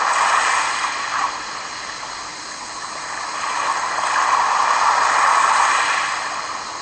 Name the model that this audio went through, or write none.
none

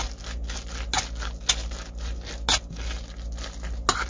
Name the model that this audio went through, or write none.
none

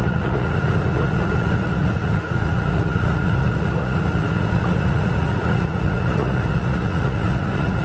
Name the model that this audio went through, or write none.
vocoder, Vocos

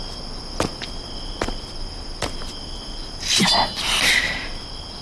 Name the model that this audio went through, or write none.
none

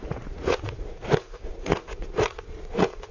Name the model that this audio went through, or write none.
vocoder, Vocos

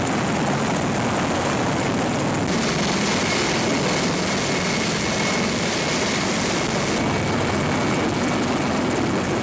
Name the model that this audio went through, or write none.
none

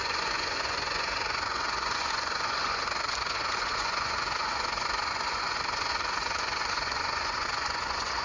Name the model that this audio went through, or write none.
vocoder, Vocos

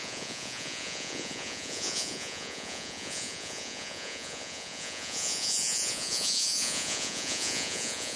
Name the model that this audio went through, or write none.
vocoder, Vocos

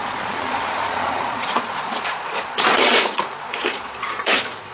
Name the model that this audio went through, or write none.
vocoder, Vocos